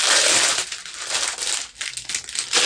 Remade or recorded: recorded